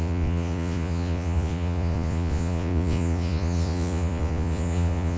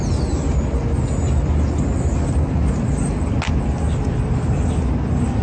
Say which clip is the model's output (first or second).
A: first